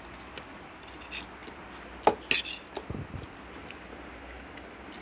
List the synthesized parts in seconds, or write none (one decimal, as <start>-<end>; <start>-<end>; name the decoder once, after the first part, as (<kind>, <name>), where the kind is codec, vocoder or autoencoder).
none